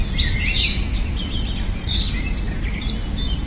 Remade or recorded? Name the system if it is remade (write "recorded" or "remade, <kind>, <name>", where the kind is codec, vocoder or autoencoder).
recorded